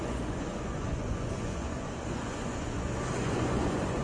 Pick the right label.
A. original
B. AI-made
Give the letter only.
B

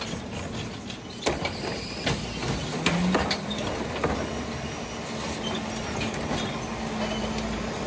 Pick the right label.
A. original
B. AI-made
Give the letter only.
A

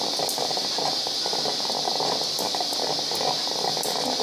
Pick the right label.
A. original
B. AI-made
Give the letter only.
A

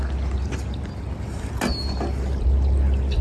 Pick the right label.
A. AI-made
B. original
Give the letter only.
B